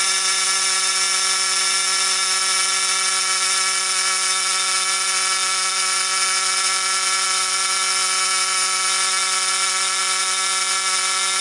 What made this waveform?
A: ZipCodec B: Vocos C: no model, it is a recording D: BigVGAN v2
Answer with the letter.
B